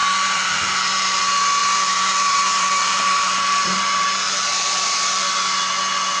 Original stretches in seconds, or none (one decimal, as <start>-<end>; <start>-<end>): 1.2-1.6; 5.3-6.2